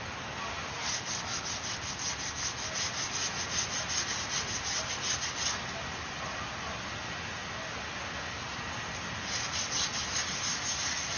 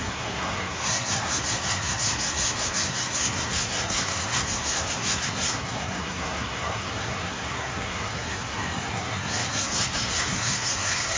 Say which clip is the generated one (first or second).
second